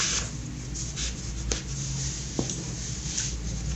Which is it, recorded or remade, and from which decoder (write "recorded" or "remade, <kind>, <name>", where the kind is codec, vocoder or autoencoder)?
recorded